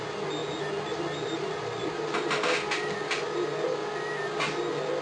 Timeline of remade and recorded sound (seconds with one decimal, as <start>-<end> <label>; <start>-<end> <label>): 0.0-5.0 recorded